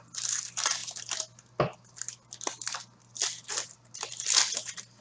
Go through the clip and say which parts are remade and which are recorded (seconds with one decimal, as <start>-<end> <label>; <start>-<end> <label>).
0.0-5.0 recorded